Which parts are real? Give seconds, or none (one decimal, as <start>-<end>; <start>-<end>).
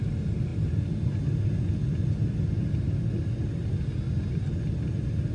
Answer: 0.0-5.3